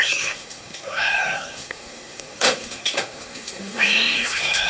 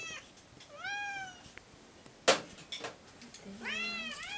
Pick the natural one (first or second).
second